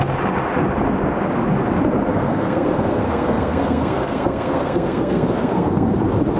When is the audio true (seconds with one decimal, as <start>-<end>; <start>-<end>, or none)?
0.0-2.1; 5.9-6.4